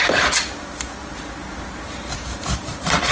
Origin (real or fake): fake